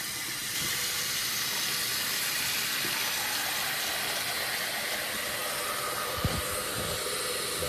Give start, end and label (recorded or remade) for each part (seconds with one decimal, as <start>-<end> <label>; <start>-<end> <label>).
0.0-0.4 recorded; 0.4-1.0 remade; 1.0-7.7 recorded